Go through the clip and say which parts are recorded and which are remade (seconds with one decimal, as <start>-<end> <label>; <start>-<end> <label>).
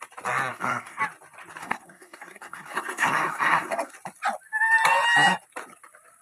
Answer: 0.0-0.5 recorded; 0.5-1.0 remade; 1.0-1.6 recorded; 1.6-3.9 remade; 3.9-6.2 recorded